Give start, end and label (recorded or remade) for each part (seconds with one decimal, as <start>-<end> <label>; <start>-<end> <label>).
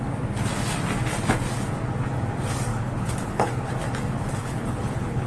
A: 0.0-2.7 recorded; 2.7-3.7 remade; 3.7-4.4 recorded; 4.4-5.3 remade